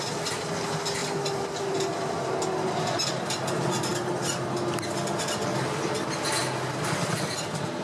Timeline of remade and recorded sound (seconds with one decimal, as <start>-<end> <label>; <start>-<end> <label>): 0.0-1.0 recorded; 1.0-3.0 remade; 3.0-3.9 recorded; 3.9-6.4 remade; 6.4-7.8 recorded